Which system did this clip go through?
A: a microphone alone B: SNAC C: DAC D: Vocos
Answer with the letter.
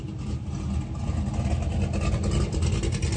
A